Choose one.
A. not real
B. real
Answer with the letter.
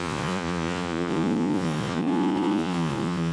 A